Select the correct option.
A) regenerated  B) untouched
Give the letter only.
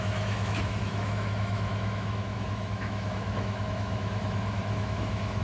A